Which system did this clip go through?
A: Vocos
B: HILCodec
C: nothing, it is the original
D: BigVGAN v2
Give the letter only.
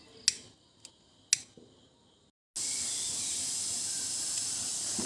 C